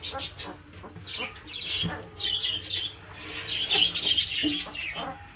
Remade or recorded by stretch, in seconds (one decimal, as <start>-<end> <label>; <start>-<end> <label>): 0.0-5.4 recorded